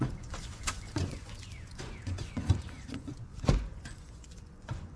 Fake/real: fake